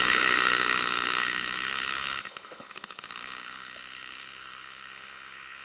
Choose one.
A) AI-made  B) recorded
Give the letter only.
A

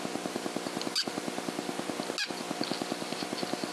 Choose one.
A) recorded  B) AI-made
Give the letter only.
A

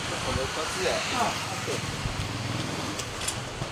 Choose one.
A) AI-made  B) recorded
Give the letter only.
B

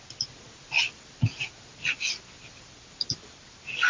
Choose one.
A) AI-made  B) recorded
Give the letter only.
B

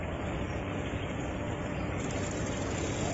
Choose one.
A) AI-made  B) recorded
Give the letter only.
A